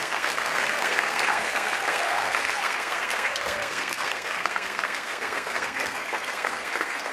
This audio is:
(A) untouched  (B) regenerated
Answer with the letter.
B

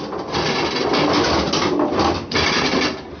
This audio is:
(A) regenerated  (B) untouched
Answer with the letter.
B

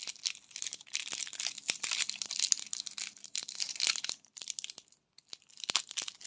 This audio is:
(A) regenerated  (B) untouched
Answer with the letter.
B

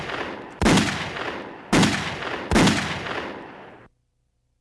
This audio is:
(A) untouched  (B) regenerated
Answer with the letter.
A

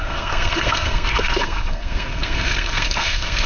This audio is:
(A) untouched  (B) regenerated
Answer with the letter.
B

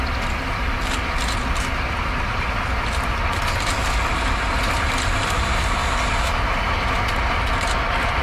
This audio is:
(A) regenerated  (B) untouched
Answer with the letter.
B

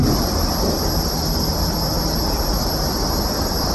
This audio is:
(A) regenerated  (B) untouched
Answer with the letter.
B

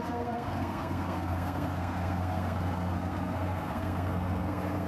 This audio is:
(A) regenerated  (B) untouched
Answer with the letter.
A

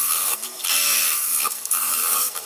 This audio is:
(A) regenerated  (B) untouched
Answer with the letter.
A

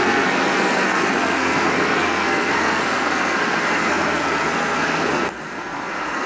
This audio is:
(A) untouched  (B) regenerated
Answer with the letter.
B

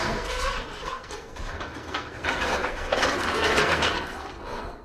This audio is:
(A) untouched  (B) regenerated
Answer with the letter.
B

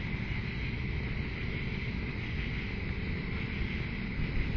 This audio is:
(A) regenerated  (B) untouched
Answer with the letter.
B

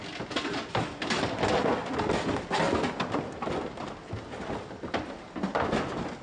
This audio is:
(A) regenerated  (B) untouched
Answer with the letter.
B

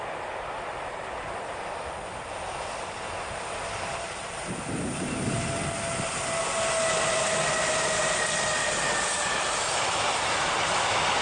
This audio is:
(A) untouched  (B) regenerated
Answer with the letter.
A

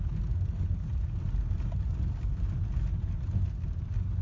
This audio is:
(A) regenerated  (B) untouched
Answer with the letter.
B